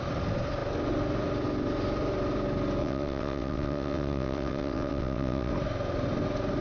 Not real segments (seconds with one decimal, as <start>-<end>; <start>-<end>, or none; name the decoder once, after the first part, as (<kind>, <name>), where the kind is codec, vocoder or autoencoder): 2.8-5.5 (vocoder, WaveNeXt)